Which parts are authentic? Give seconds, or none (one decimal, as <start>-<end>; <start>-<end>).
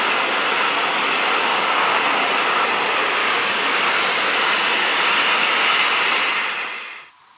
0.0-1.5; 2.0-3.2; 3.8-7.4